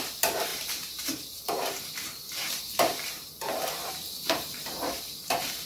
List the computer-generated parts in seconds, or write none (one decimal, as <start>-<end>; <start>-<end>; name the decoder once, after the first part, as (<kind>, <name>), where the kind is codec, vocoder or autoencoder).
0.0-5.7 (vocoder, BigVGAN v2)